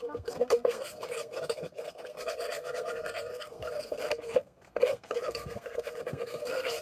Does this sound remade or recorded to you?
remade